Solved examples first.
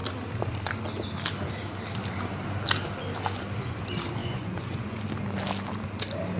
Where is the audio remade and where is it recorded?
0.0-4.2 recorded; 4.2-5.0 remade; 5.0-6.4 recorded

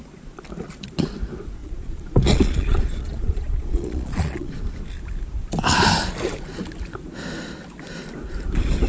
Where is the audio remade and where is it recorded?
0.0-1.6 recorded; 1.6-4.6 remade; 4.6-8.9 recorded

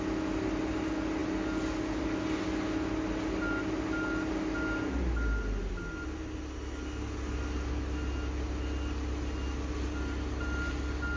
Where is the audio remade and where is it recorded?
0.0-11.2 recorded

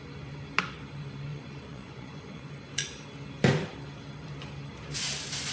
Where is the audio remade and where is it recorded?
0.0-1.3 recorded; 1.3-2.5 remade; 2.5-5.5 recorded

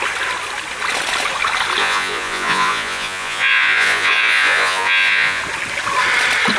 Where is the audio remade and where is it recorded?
0.0-1.8 recorded; 1.8-5.4 remade; 5.4-6.6 recorded